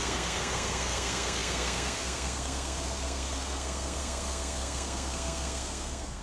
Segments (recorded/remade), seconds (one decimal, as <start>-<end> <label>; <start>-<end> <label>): 0.0-6.2 remade